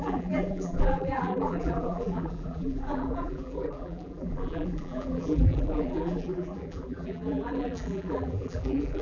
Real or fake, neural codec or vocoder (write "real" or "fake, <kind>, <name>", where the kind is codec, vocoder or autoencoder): fake, vocoder, BigVGAN v2